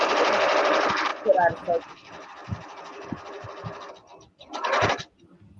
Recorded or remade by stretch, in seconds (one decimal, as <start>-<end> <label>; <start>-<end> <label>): 0.0-5.6 recorded